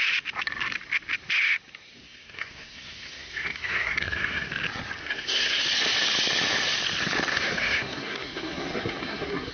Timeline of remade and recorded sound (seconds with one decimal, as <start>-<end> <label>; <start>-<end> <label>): 0.0-2.0 recorded; 2.0-4.5 remade; 4.5-5.0 recorded; 5.0-5.6 remade; 5.6-7.3 recorded; 7.3-9.5 remade

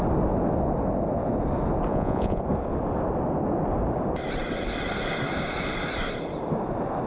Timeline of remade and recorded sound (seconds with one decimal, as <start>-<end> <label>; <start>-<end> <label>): 0.0-1.9 recorded; 1.9-2.4 remade; 2.4-7.1 recorded

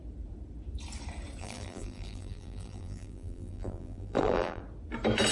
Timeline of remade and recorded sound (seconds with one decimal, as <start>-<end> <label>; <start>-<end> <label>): 0.0-1.4 recorded; 1.4-4.6 remade; 4.6-5.3 recorded

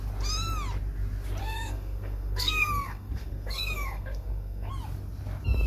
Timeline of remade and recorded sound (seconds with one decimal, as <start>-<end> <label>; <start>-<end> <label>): 0.0-1.4 recorded; 1.4-4.7 remade; 4.7-5.7 recorded

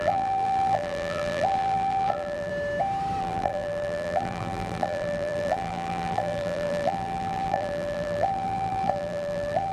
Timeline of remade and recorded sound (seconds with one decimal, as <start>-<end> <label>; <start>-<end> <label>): 0.0-2.5 remade; 2.5-3.2 recorded; 3.2-9.7 remade

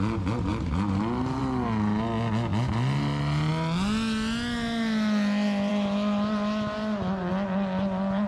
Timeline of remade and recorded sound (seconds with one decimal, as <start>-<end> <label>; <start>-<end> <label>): 0.0-8.3 recorded

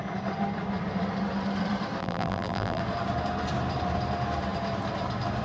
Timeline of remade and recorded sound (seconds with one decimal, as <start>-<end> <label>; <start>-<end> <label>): 0.0-2.0 recorded; 2.0-2.8 remade; 2.8-5.4 recorded